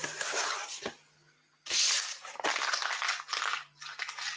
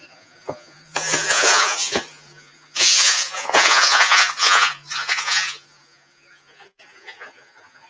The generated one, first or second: second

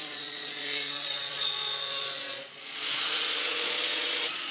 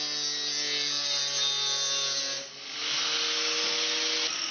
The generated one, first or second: first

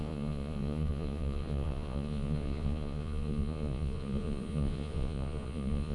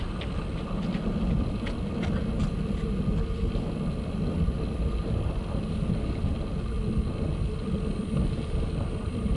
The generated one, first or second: first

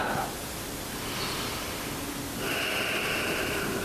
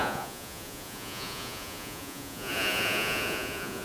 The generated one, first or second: second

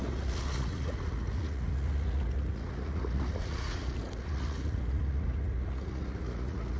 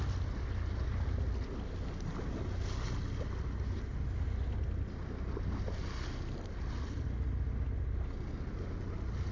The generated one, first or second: first